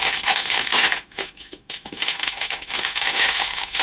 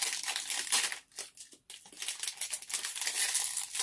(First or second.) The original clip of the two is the second